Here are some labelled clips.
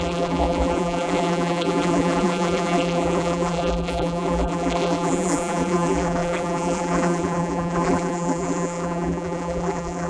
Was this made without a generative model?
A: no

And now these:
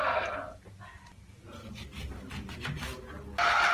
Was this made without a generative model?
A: yes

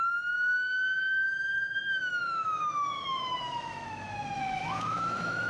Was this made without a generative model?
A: no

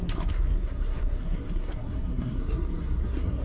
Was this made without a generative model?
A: no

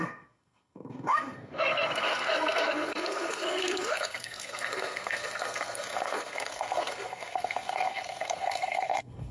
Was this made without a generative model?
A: no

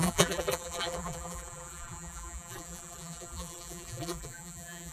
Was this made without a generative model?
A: no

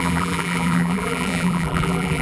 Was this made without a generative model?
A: no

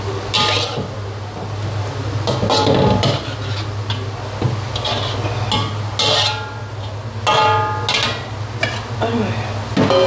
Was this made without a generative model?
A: yes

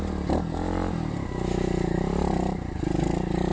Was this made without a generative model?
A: yes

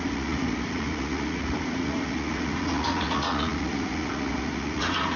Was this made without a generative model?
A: no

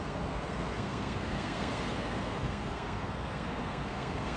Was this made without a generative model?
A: no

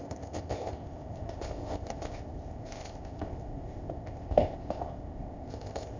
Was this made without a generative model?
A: no